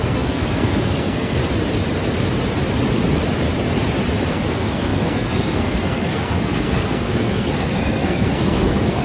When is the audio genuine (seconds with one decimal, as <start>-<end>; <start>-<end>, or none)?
1.4-4.3

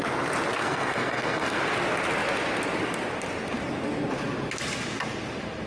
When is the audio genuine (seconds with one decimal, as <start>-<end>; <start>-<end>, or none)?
0.0-0.6; 1.6-5.7